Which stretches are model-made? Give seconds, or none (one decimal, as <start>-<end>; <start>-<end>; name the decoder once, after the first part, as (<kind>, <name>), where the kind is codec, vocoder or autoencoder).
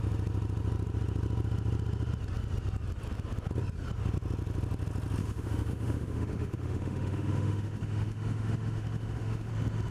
5.2-9.5 (autoencoder, DAC-VAE)